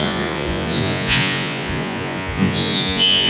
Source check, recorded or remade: remade